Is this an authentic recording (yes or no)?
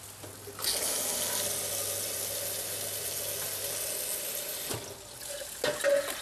yes